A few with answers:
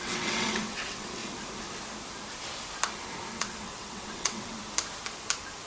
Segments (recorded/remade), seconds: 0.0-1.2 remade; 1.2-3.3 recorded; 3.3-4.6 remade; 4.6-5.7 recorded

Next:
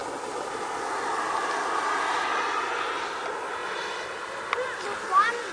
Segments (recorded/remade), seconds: 0.0-5.5 recorded

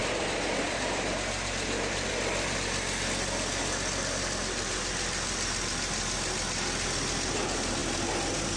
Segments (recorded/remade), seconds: 0.0-2.1 remade; 2.1-8.6 recorded

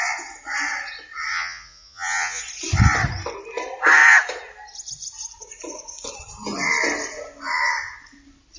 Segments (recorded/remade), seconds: 0.0-1.3 recorded; 1.3-2.4 remade; 2.4-8.6 recorded

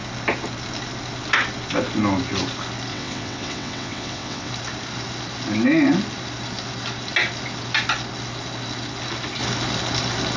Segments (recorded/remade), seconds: 0.0-2.9 recorded; 2.9-4.5 remade; 4.5-10.4 recorded